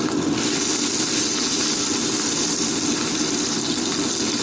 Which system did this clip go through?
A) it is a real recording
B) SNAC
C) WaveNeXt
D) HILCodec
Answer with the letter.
A